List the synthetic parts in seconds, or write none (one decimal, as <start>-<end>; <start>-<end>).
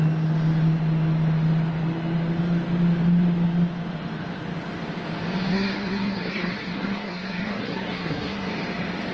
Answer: 5.5-8.5